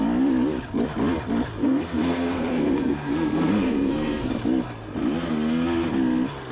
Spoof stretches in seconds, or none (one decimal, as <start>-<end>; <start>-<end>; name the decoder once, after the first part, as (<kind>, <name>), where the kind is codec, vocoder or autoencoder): 1.6-4.3 (codec, SNAC)